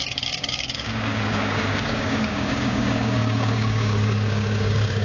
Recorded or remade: remade